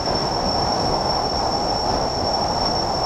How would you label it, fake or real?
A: real